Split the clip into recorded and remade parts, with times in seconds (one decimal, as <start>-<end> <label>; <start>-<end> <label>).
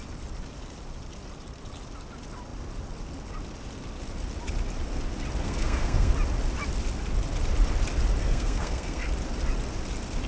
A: 0.0-5.4 recorded; 5.4-6.1 remade; 6.1-8.2 recorded; 8.2-9.1 remade; 9.1-10.3 recorded